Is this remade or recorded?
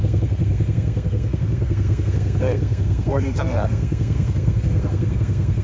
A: remade